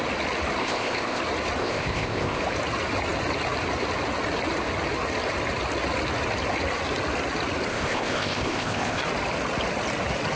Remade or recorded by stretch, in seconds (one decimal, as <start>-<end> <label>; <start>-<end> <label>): 0.0-0.6 recorded; 0.6-1.2 remade; 1.2-1.6 recorded; 1.6-2.4 remade; 2.4-7.7 recorded; 7.7-9.0 remade; 9.0-10.4 recorded